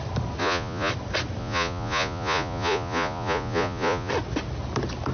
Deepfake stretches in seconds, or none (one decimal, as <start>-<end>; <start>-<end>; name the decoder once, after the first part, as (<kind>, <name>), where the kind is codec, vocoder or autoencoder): 0.4-0.9 (vocoder, Vocos); 1.4-4.1